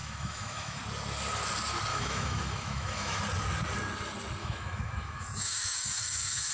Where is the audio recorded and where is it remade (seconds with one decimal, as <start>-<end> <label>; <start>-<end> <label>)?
0.0-0.8 remade; 0.8-1.9 recorded; 1.9-3.2 remade; 3.2-4.4 recorded; 4.4-6.5 remade